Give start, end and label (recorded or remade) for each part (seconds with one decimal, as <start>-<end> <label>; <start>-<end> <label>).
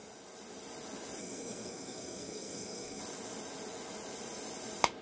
0.0-1.2 recorded; 1.2-3.0 remade; 3.0-5.0 recorded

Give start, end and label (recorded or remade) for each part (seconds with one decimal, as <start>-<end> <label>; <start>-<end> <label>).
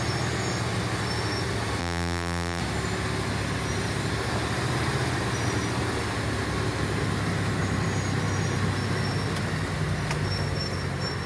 0.0-1.8 recorded; 1.8-2.6 remade; 2.6-11.3 recorded